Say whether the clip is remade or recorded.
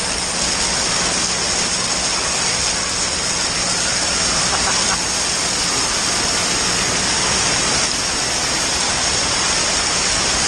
recorded